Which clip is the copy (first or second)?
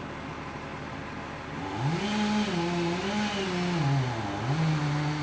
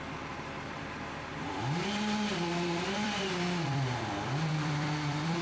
second